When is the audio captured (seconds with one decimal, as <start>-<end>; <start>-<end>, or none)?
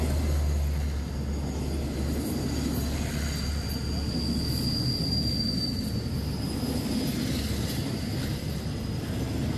0.0-9.6